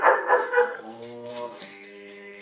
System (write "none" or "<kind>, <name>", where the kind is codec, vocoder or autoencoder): codec, SNAC